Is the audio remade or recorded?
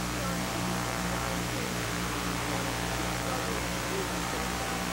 remade